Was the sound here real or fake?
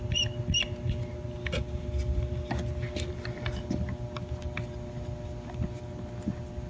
real